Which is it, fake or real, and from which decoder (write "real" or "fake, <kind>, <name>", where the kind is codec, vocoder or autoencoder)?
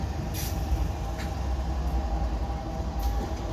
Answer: real